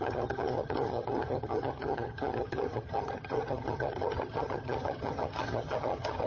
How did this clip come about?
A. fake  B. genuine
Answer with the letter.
A